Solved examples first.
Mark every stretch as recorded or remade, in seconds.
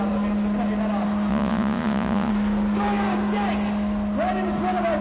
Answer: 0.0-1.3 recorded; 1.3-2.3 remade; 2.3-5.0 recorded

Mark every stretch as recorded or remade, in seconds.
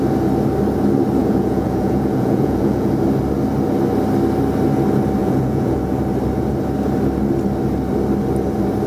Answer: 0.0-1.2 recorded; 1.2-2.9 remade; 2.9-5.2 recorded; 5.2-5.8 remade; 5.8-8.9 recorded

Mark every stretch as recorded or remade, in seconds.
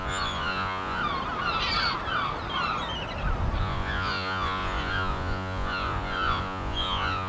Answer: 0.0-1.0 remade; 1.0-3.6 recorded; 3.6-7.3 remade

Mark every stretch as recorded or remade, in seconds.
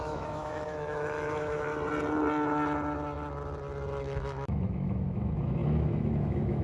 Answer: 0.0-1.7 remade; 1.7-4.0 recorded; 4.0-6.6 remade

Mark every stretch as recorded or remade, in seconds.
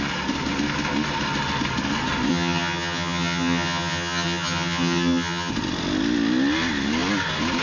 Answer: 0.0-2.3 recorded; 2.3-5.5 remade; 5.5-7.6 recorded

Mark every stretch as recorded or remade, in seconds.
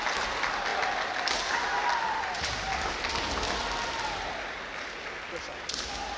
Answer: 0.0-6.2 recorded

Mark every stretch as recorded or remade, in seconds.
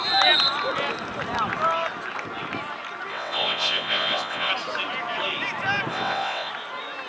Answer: 0.0-3.1 recorded; 3.1-4.5 remade; 4.5-5.9 recorded; 5.9-6.5 remade; 6.5-7.1 recorded